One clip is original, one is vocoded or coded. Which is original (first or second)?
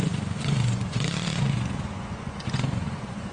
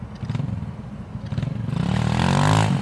second